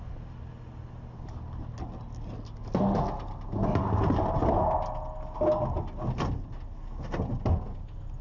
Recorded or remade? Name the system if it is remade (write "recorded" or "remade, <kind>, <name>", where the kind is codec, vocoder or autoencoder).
recorded